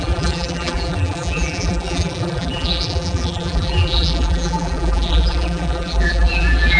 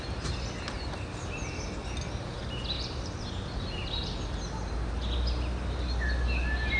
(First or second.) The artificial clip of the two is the first